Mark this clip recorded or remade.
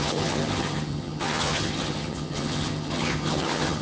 remade